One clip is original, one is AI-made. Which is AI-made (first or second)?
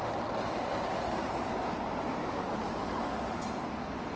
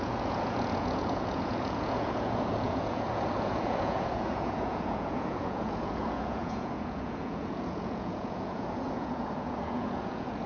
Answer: second